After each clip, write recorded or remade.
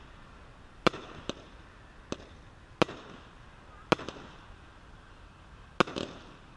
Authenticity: recorded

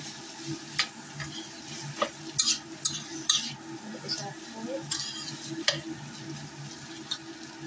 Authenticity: recorded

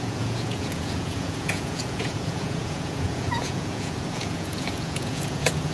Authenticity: remade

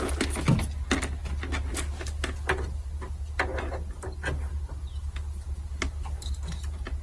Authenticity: recorded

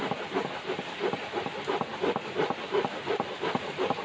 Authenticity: recorded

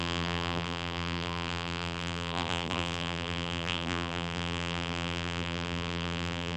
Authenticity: remade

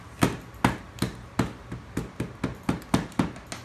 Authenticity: recorded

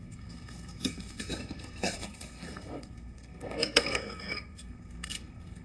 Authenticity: remade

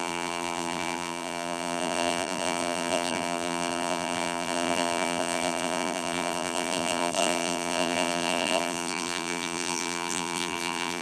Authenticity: remade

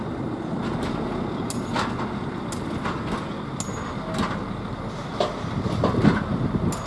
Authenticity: recorded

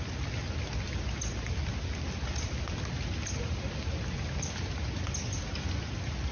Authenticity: recorded